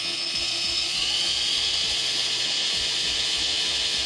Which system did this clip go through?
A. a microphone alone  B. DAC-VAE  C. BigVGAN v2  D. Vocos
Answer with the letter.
D